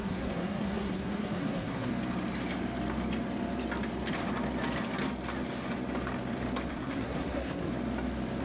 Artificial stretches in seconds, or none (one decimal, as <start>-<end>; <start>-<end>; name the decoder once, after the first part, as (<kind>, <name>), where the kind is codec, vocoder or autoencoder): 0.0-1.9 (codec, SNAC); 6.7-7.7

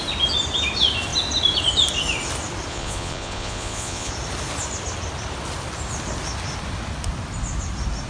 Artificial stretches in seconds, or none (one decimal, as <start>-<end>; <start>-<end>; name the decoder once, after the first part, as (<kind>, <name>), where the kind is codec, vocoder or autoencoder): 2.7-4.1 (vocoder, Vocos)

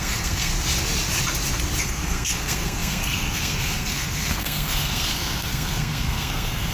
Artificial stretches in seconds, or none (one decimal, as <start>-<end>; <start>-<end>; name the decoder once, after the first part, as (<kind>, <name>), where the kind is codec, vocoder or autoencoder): 0.0-0.5 (codec, SNAC); 1.8-6.7

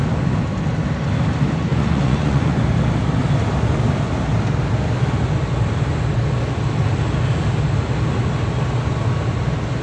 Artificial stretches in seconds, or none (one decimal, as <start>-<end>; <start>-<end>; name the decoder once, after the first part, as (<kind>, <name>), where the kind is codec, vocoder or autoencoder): 1.7-2.6 (vocoder, Vocos)

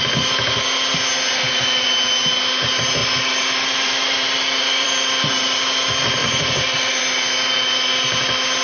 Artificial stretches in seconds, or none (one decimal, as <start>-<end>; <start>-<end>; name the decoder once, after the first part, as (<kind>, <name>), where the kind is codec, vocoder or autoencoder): 3.0-5.3 (vocoder, BigVGAN v2); 6.2-7.0

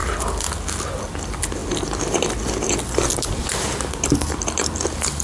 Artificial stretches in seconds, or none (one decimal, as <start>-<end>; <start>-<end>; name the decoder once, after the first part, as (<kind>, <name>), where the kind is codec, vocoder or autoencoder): none

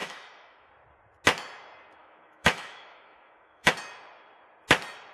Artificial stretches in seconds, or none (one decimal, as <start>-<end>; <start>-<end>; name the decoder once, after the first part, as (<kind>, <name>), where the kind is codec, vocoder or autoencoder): 0.0-0.7 (autoencoder, DAC-VAE); 2.0-3.7